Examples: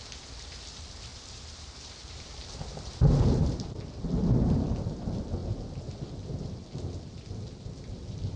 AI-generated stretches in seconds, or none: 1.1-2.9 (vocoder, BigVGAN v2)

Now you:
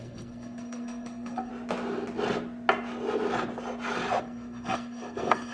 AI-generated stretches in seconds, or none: 0.0-1.5 (codec, SNAC); 4.2-5.5

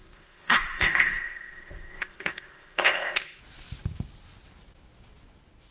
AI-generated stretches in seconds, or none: 0.0-3.4 (codec, ZipCodec)

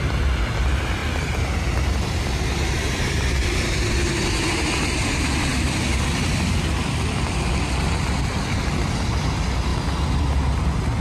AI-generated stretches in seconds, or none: 1.0-3.9 (vocoder, BigVGAN v2); 5.5-7.6; 8.3-8.9